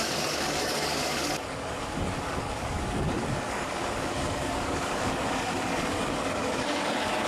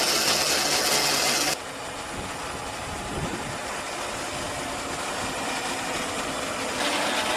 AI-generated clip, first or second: first